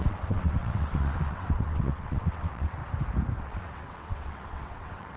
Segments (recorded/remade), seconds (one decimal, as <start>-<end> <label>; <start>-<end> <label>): 0.0-2.8 remade; 2.8-3.4 recorded; 3.4-5.2 remade